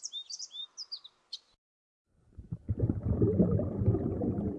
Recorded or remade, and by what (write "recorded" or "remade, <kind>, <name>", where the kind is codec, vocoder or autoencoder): recorded